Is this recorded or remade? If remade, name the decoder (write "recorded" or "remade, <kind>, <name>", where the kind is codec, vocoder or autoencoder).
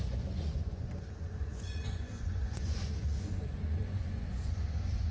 remade, vocoder, Vocos